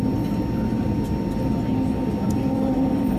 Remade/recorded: recorded